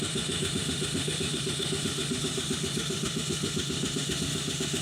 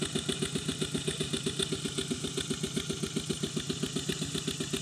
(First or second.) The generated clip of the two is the first